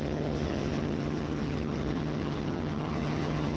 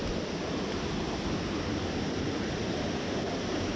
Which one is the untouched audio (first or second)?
second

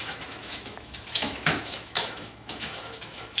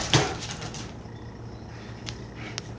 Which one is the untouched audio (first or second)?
second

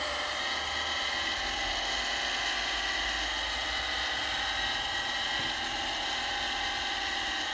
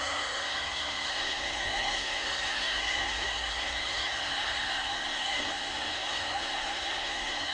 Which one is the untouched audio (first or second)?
first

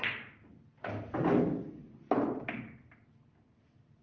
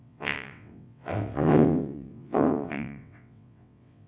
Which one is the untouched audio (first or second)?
first